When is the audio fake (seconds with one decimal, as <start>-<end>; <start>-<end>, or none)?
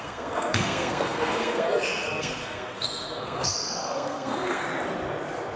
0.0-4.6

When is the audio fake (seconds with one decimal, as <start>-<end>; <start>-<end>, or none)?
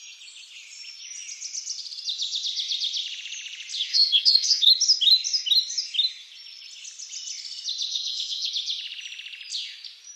3.9-4.7; 7.9-8.5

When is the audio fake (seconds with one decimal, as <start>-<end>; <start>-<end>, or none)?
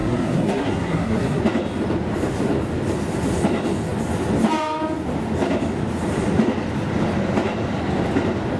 0.0-1.4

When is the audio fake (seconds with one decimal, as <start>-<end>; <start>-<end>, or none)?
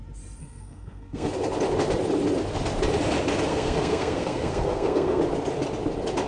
0.4-1.3; 3.5-5.2